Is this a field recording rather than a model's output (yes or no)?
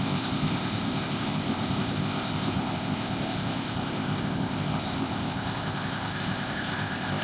no